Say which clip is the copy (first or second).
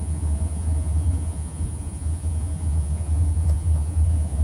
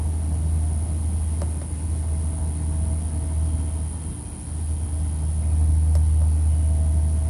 first